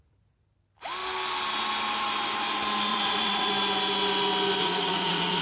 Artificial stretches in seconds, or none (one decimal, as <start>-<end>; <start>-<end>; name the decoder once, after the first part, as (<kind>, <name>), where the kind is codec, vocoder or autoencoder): 2.9-3.5 (vocoder, Vocos); 4.6-5.4